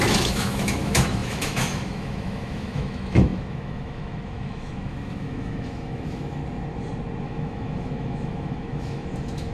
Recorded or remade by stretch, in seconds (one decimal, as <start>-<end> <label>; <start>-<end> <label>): 0.0-6.4 remade; 6.4-7.2 recorded; 7.2-9.5 remade

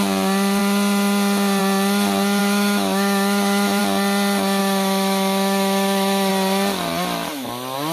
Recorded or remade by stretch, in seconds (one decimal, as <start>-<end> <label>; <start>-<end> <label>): 0.0-2.4 recorded; 2.4-3.8 remade; 3.8-4.6 recorded; 4.6-6.3 remade; 6.3-7.9 recorded

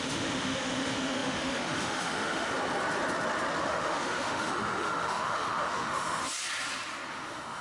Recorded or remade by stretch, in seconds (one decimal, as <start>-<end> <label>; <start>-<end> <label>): 0.0-2.5 remade; 2.5-3.6 recorded; 3.6-6.2 remade; 6.2-7.1 recorded; 7.1-7.6 remade

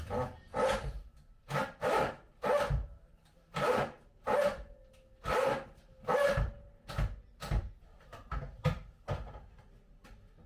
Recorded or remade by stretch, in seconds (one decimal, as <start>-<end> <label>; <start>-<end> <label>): 0.0-10.5 recorded